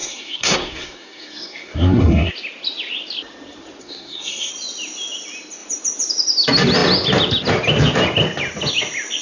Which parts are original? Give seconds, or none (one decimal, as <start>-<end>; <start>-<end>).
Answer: 2.3-3.8; 4.5-9.2